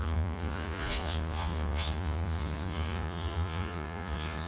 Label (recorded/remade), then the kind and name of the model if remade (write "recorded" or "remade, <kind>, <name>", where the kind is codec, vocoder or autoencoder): remade, vocoder, Vocos